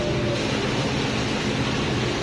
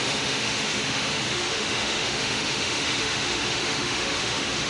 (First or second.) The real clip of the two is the first